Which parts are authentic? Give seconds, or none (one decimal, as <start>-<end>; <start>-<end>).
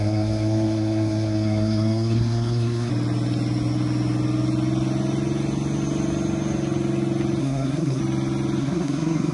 2.9-7.4; 8.0-8.6